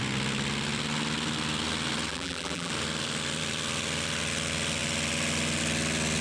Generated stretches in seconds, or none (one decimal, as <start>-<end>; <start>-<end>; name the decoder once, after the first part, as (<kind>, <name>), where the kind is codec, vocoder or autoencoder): 2.1-2.7 (vocoder, BigVGAN v2)